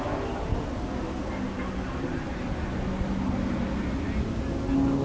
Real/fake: real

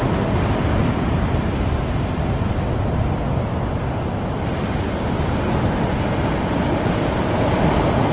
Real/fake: real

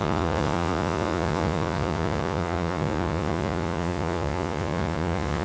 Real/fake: fake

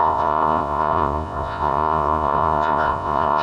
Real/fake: fake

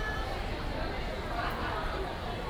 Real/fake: real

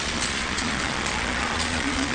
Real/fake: fake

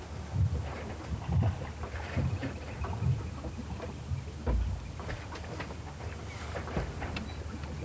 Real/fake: real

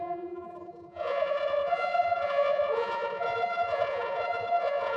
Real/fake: fake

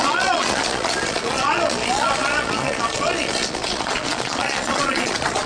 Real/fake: fake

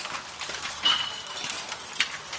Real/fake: real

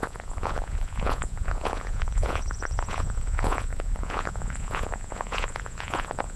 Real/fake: fake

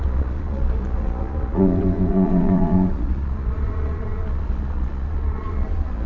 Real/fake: fake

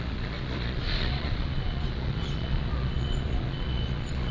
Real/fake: fake